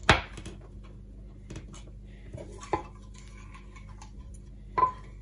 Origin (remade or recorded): recorded